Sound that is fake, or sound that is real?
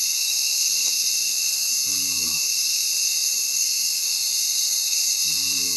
fake